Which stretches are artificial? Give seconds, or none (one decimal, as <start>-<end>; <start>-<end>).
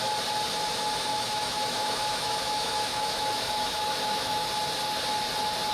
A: 1.1-4.5